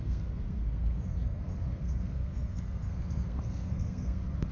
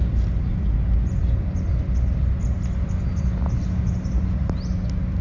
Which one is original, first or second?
second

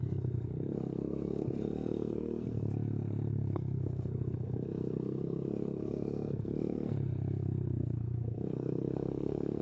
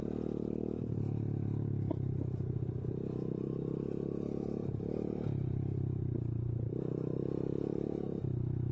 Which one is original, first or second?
second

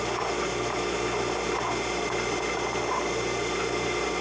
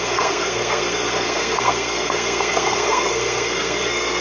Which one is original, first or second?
first